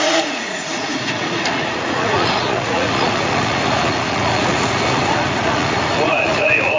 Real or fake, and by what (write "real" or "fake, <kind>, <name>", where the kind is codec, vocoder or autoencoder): fake, vocoder, Vocos